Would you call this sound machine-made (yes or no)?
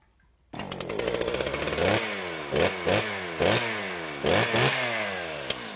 no